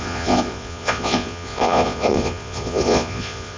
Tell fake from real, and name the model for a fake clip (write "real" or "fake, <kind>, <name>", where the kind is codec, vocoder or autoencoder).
fake, vocoder, Vocos